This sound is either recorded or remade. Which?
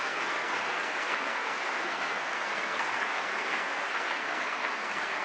remade